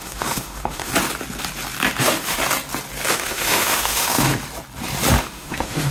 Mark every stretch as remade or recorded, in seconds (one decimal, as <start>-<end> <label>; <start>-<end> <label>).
0.0-0.9 remade; 0.9-2.0 recorded; 2.0-2.4 remade; 2.4-3.1 recorded; 3.1-4.3 remade; 4.3-5.2 recorded; 5.2-5.9 remade